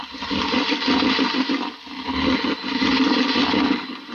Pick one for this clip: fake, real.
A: real